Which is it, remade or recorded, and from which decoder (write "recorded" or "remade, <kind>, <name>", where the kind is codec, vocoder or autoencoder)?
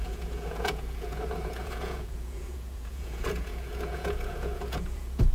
remade, vocoder, Vocos